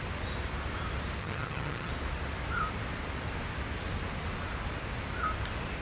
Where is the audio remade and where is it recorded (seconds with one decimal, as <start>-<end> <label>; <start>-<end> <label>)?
0.0-1.2 recorded; 1.2-1.9 remade; 1.9-5.8 recorded